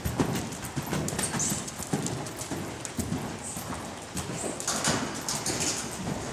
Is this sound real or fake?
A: real